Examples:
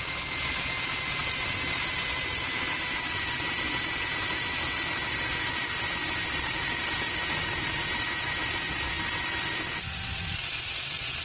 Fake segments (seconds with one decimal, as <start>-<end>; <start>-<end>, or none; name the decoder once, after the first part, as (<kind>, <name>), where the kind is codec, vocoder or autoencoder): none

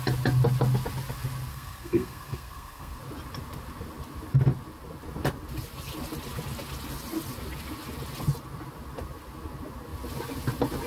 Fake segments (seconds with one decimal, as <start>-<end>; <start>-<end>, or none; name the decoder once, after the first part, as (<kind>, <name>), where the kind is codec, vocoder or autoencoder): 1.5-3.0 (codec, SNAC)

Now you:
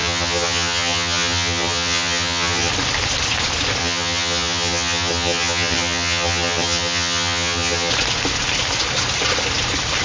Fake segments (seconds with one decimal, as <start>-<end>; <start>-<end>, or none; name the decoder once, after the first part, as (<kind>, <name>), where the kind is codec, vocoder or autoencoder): 0.0-2.7 (vocoder, HiFi-GAN); 3.8-7.9